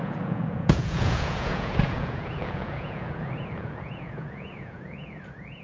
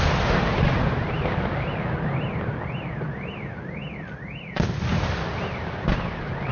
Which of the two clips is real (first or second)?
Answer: second